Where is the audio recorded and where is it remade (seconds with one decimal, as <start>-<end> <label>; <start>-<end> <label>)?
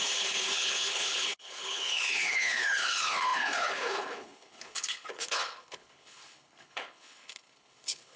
0.0-8.2 remade